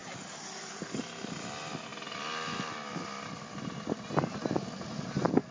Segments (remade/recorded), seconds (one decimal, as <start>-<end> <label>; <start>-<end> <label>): 0.0-5.5 recorded